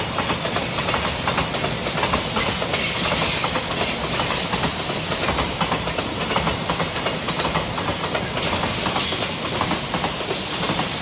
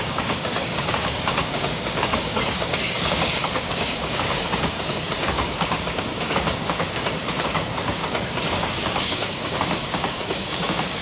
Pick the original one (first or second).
first